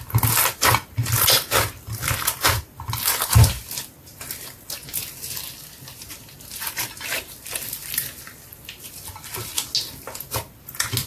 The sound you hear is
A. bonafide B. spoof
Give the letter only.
A